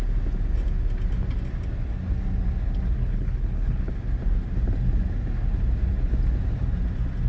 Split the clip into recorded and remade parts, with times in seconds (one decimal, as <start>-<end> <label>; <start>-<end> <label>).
0.0-3.0 recorded; 3.0-3.9 remade; 3.9-7.3 recorded